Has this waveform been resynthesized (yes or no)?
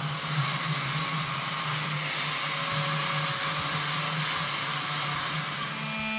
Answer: no